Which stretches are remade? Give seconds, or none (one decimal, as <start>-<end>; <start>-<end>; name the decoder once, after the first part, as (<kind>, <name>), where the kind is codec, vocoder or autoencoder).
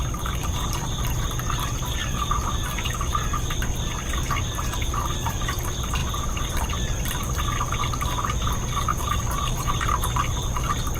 2.0-2.5 (vocoder, BigVGAN v2); 8.9-9.7